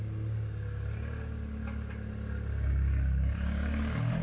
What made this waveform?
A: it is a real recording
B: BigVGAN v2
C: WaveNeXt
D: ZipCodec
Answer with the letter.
A